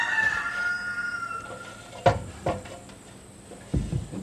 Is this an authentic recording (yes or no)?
yes